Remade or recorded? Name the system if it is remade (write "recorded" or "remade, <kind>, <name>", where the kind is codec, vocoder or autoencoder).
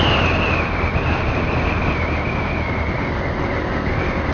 recorded